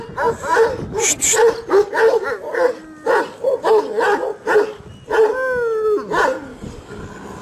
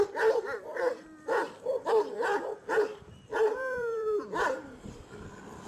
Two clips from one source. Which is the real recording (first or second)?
first